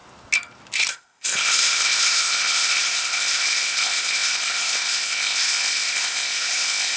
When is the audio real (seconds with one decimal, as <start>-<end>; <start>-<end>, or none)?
0.0-0.9